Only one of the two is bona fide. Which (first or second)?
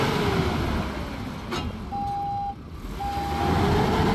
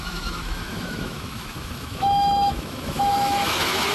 first